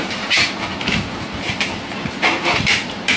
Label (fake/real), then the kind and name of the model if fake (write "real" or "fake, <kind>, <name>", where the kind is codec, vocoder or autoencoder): real